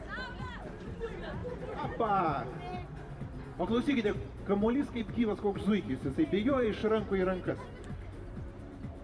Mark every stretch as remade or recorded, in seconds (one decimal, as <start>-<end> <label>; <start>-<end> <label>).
0.0-6.8 remade; 6.8-7.5 recorded; 7.5-9.0 remade